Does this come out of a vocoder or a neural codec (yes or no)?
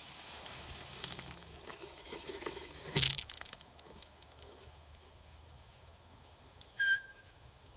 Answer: yes